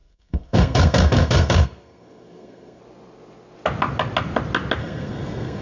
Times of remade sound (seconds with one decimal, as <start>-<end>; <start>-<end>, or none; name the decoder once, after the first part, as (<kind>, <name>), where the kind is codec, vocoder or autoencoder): 0.0-2.8 (codec, SNAC); 4.8-5.6